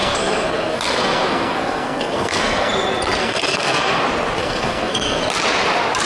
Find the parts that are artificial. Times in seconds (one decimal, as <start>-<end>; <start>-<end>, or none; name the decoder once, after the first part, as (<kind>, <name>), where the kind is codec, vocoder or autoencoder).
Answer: 0.0-2.7 (codec, SNAC); 3.2-4.0; 4.4-5.2